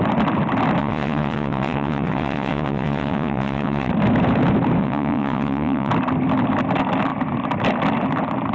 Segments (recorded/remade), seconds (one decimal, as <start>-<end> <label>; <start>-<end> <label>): 0.0-0.8 recorded; 0.8-3.9 remade; 3.9-4.8 recorded; 4.8-5.9 remade; 5.9-8.5 recorded